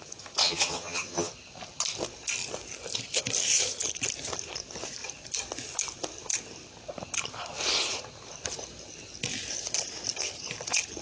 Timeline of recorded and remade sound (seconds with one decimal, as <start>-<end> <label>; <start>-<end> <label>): 0.0-0.4 recorded; 0.4-1.3 remade; 1.3-11.0 recorded